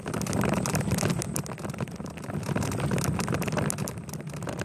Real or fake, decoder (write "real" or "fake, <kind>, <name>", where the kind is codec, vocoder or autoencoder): real